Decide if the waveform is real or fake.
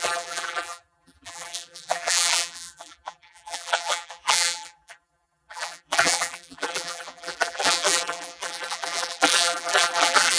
fake